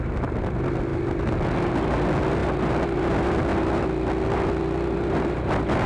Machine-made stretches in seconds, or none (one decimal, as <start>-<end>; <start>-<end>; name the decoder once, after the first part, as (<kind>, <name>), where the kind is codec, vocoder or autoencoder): none